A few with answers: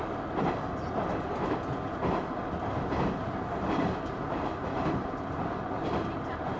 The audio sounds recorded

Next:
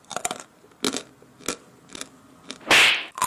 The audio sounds recorded